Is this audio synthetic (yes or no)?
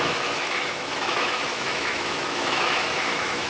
yes